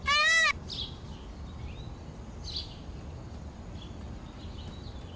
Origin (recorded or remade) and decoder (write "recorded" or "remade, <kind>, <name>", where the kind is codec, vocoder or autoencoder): recorded